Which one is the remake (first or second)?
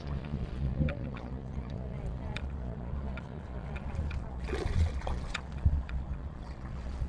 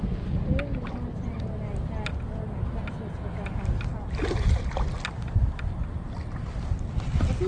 first